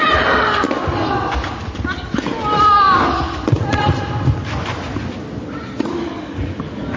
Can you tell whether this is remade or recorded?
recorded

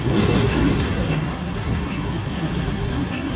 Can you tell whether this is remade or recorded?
remade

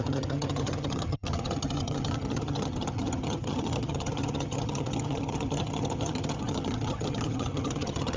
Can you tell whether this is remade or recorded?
remade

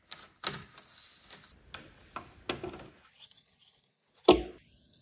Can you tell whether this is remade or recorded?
recorded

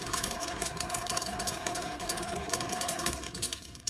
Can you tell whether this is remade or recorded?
remade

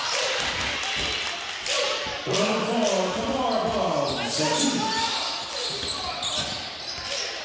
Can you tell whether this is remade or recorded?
recorded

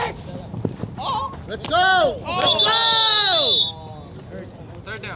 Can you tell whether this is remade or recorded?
recorded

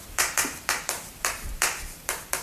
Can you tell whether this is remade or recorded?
remade